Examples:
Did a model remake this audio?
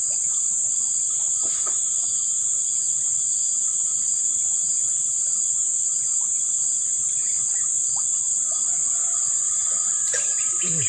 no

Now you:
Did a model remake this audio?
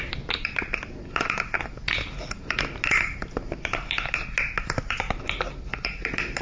no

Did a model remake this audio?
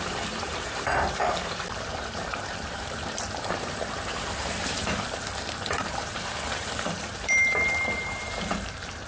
yes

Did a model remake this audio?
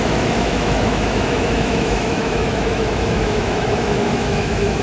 yes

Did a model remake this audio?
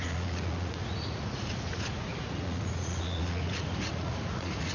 yes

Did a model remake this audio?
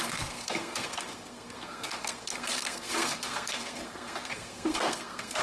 yes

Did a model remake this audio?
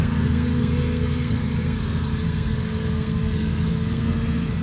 yes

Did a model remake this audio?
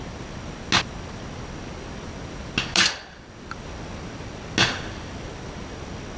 no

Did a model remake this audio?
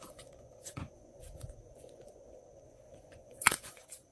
yes